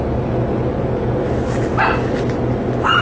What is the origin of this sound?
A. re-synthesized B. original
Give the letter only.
B